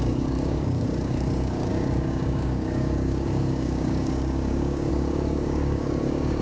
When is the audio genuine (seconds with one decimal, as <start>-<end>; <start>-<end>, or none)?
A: none